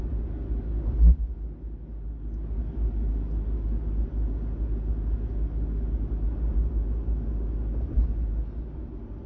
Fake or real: real